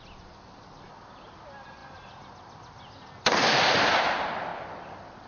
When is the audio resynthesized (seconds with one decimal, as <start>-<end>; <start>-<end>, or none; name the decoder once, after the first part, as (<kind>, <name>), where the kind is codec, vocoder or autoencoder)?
none